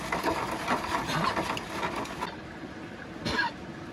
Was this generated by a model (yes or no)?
yes